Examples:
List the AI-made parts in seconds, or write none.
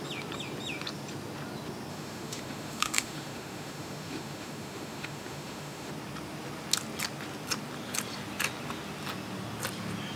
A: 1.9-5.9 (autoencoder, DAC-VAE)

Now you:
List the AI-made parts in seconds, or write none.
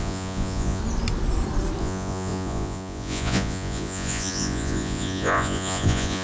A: 0.0-0.8 (vocoder, Vocos); 1.8-6.2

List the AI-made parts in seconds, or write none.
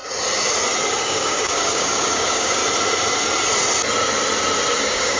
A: 1.0-2.6 (codec, DAC); 4.8-5.2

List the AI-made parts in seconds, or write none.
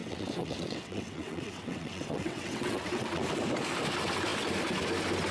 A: 0.0-3.2 (vocoder, WaveNeXt)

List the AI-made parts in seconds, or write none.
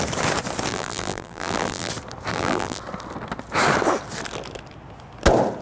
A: 0.7-1.9 (vocoder, BigVGAN v2); 2.3-2.8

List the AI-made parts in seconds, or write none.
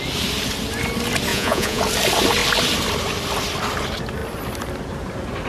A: 1.3-1.8 (vocoder, Vocos)